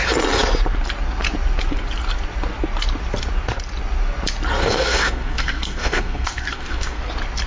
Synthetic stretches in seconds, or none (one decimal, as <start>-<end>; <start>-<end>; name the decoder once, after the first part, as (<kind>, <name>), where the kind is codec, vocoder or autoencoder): 4.6-7.0 (codec, SNAC)